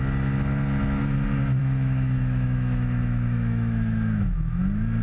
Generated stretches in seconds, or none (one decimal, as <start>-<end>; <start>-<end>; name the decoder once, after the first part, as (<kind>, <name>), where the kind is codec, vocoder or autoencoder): 1.6-4.6 (autoencoder, DAC-VAE)